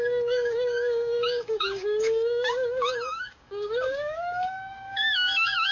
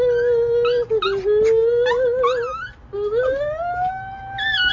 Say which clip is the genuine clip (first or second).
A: second